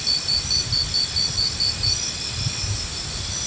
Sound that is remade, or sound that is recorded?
recorded